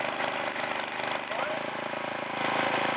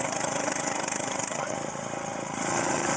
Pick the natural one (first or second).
first